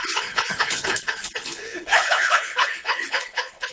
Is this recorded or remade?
remade